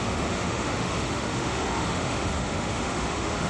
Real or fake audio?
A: fake